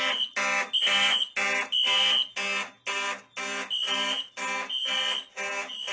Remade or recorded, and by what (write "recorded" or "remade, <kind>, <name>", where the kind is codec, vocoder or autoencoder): recorded